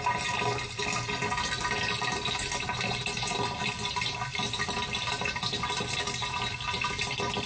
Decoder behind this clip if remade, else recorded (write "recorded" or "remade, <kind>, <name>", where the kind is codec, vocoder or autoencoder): recorded